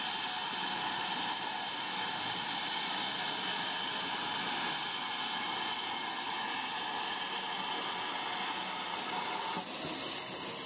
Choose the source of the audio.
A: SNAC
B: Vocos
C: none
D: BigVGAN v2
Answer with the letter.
C